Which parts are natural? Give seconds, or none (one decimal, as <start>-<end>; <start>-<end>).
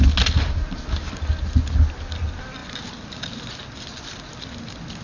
0.0-5.0